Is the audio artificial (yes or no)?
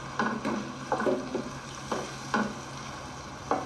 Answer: no